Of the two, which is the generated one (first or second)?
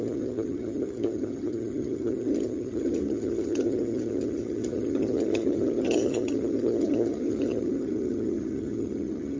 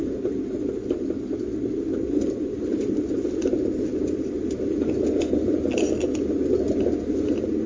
first